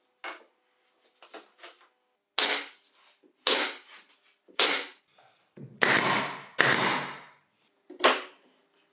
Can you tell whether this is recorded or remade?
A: recorded